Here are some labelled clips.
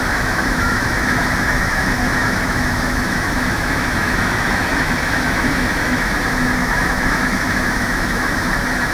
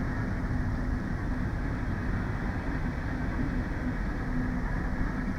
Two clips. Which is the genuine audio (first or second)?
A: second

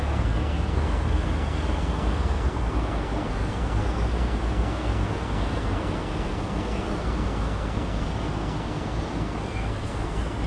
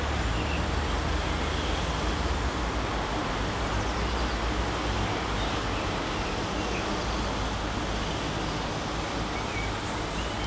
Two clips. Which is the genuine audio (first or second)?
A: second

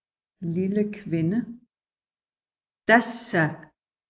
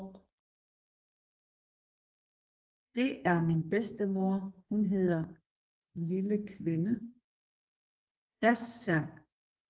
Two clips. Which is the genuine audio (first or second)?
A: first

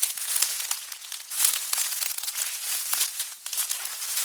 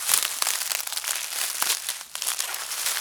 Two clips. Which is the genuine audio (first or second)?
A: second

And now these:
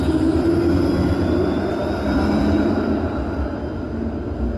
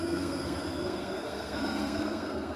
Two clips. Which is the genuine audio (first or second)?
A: first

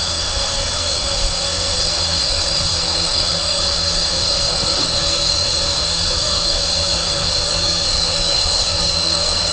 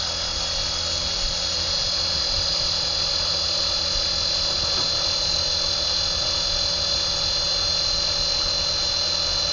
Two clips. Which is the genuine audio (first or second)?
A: second